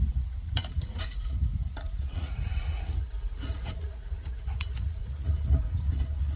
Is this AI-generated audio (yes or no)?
yes